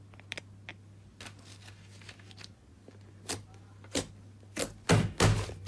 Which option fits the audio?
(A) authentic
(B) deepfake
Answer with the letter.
A